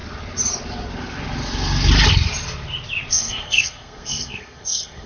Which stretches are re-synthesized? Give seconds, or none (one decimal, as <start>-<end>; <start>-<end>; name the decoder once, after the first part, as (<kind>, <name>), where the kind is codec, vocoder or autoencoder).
3.1-5.1 (codec, SNAC)